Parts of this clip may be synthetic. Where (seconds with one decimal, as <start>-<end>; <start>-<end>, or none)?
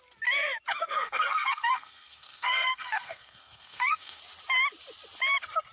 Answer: 0.8-4.2